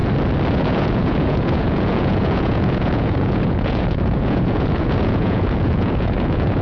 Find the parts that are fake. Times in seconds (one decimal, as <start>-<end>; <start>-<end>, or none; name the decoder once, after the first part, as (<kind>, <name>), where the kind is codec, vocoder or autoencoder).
0.5-6.6 (vocoder, Vocos)